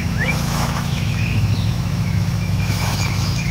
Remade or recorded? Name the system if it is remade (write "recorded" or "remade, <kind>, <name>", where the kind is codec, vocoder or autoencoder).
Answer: remade, autoencoder, DAC-VAE